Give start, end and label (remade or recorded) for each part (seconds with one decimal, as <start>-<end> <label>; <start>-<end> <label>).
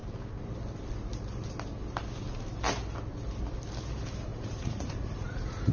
0.0-4.3 recorded; 4.3-5.7 remade